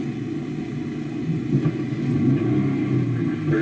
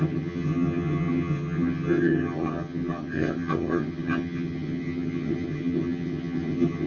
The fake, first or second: second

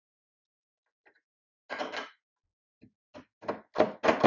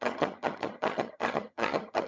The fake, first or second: second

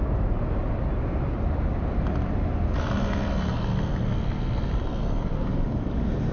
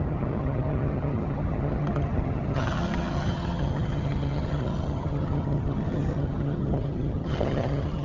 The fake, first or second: second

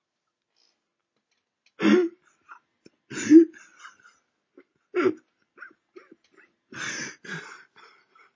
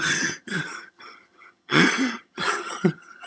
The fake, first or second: second